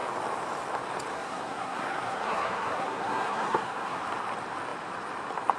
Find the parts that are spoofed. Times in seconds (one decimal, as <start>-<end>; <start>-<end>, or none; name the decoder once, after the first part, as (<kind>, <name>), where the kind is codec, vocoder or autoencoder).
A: 1.1-4.0 (codec, SNAC)